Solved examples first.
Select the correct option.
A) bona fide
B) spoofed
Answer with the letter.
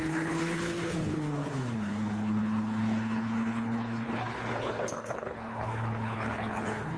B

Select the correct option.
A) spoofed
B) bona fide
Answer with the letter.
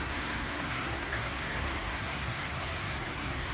A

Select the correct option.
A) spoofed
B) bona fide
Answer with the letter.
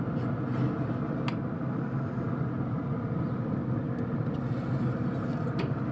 B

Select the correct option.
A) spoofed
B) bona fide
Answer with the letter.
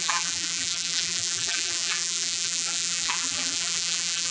A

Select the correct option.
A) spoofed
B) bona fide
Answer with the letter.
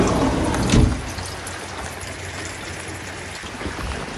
B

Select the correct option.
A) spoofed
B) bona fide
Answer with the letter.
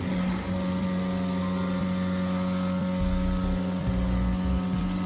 B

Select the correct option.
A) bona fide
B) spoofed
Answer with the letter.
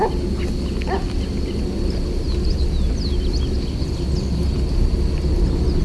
A